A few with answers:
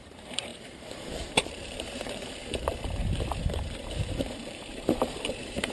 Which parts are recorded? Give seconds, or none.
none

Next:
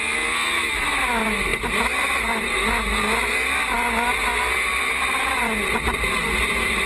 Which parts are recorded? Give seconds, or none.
0.0-6.9

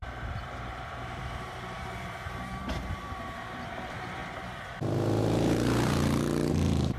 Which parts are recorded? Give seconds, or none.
4.2-5.2

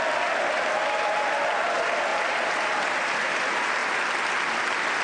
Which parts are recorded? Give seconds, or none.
0.0-5.0

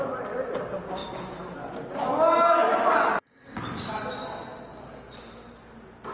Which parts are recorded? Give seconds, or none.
0.0-6.1